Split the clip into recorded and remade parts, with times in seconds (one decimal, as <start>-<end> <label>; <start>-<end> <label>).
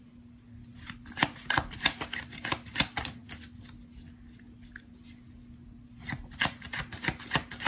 0.0-7.7 recorded